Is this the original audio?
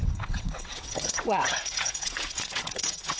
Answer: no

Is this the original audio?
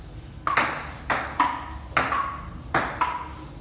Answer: yes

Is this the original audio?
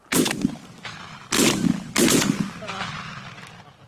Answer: yes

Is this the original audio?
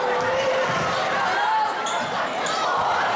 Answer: yes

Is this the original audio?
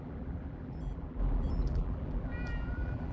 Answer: no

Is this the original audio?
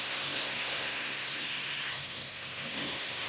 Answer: no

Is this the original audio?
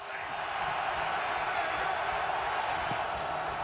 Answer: yes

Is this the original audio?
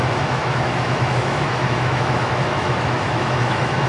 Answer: no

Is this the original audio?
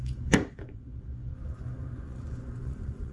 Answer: no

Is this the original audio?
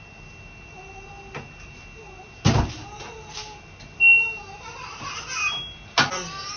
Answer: yes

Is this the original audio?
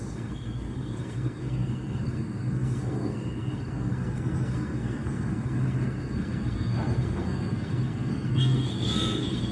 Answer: no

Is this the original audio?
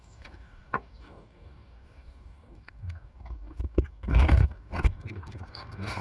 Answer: no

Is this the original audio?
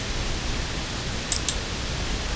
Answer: yes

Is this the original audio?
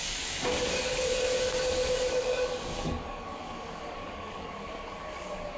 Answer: no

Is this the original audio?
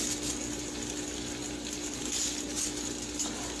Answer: yes